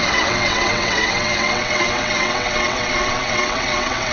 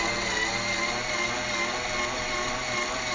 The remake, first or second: first